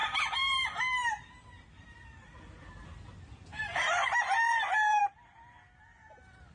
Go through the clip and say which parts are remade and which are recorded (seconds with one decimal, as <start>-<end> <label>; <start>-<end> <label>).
0.0-2.4 remade; 2.4-3.5 recorded; 3.5-5.0 remade; 5.0-6.5 recorded